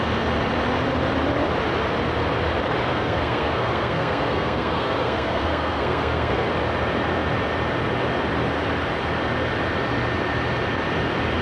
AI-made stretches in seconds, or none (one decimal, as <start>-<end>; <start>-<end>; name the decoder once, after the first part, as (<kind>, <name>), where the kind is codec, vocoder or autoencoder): 2.9-6.5 (codec, SNAC)